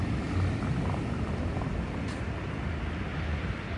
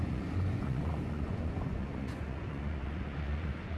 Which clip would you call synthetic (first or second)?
second